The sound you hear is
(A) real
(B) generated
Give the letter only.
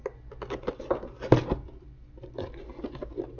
A